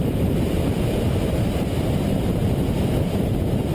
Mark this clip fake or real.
fake